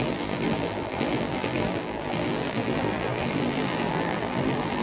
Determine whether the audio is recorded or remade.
remade